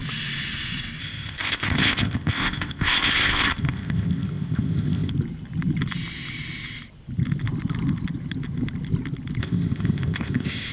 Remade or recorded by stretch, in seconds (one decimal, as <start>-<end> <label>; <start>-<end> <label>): 0.0-1.0 recorded; 1.0-5.1 remade; 5.1-9.4 recorded; 9.4-10.7 remade